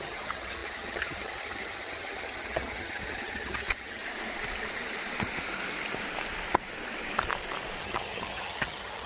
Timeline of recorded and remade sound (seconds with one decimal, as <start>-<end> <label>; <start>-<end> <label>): 0.0-4.0 remade; 4.0-7.8 recorded; 7.8-9.1 remade